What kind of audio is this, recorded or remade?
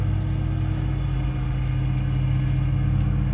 recorded